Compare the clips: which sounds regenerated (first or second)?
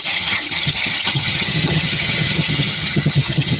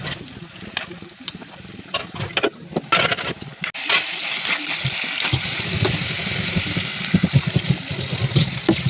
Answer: first